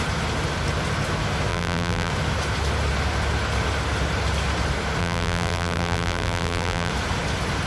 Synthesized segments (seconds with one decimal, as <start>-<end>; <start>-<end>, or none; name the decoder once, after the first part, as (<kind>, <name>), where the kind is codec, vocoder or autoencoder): 1.5-2.1 (vocoder, BigVGAN v2); 5.0-6.9